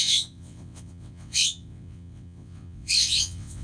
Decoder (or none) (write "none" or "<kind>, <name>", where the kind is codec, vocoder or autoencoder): vocoder, WaveNeXt